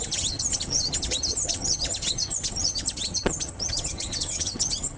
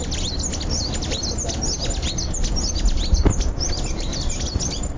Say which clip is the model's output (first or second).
first